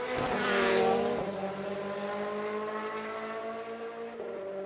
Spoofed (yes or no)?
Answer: no